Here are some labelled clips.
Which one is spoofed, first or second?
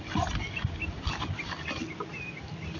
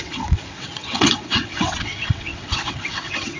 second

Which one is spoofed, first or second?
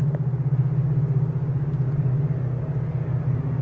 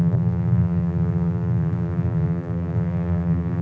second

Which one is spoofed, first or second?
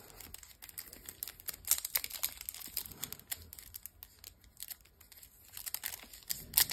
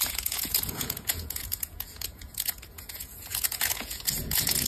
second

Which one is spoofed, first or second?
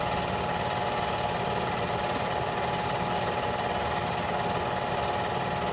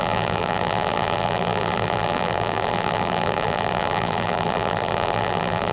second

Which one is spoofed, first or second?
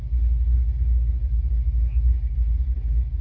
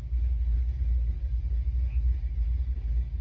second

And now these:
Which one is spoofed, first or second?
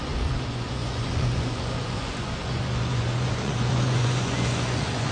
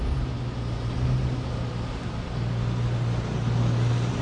first